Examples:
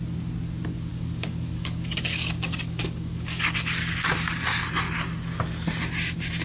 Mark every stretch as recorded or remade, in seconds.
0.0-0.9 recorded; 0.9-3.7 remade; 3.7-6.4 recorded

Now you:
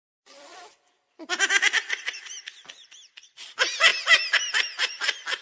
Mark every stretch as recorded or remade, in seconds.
0.0-3.9 remade; 3.9-4.9 recorded; 4.9-5.4 remade

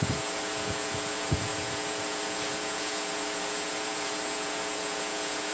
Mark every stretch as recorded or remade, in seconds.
0.0-5.5 remade

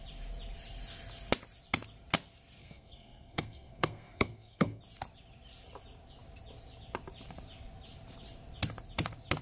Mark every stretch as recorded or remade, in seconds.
0.0-2.6 recorded; 2.6-4.8 remade; 4.8-9.4 recorded

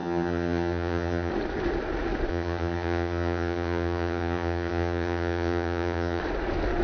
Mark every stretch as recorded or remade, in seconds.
0.0-1.3 remade; 1.3-2.3 recorded; 2.3-6.2 remade; 6.2-6.8 recorded

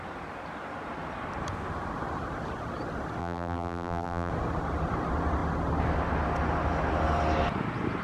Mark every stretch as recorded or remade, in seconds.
0.0-3.2 recorded; 3.2-4.3 remade; 4.3-8.0 recorded

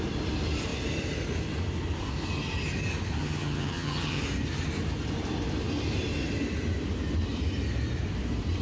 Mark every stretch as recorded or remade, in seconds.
0.0-3.2 recorded; 3.2-4.2 remade; 4.2-8.6 recorded